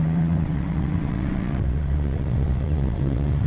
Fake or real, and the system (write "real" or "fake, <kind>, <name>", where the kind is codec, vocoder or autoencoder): fake, vocoder, WaveNeXt